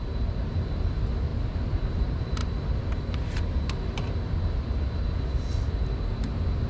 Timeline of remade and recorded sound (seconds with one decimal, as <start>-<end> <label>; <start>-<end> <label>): 0.0-6.7 recorded